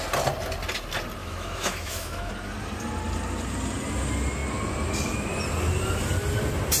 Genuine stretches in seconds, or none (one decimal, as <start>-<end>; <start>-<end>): 0.0-1.2; 2.3-6.8